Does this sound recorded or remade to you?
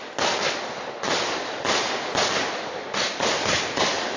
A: recorded